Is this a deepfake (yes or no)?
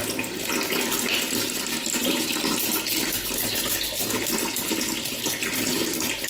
no